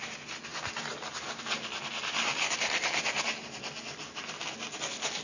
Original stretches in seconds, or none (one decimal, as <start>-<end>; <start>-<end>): 0.0-0.5; 3.6-5.2